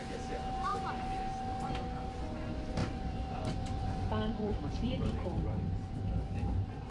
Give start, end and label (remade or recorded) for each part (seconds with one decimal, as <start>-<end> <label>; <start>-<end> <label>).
0.0-0.7 recorded; 0.7-1.2 remade; 1.2-2.8 recorded; 2.8-5.6 remade; 5.6-6.9 recorded